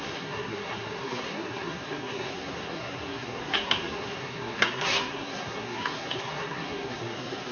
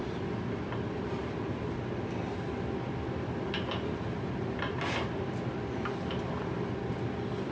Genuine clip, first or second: second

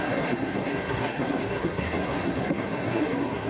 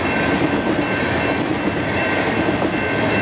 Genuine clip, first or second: second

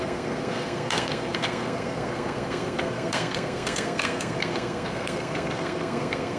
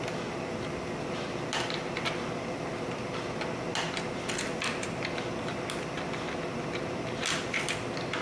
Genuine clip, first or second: second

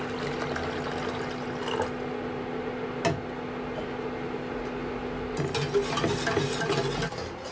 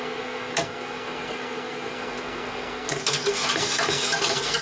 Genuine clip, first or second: first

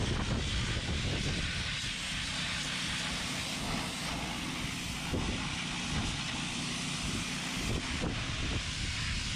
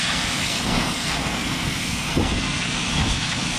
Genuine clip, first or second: first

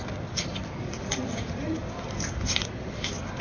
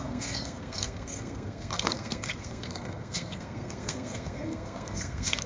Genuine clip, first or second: first